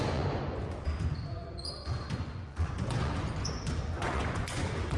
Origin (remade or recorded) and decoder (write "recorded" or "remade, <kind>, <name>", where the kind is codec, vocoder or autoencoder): remade, vocoder, Vocos